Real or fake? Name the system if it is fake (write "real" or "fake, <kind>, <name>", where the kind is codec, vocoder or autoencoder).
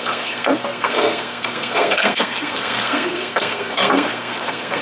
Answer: fake, codec, SNAC